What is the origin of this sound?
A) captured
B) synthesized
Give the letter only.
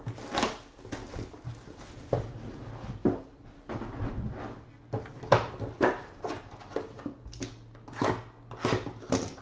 A